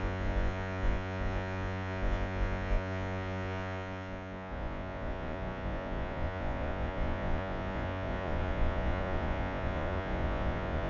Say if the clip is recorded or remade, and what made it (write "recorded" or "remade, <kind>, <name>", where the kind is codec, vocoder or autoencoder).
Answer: remade, vocoder, Vocos